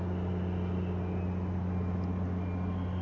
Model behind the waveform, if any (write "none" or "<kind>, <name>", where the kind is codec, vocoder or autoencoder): none